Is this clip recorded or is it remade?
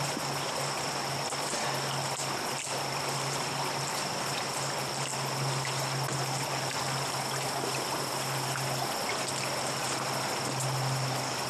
recorded